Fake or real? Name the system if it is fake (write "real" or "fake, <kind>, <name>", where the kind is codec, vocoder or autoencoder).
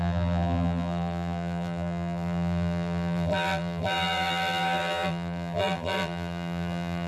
fake, vocoder, BigVGAN v2